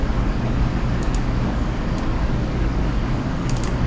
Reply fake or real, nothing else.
fake